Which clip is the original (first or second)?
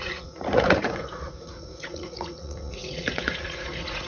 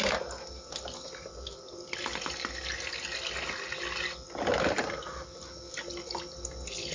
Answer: second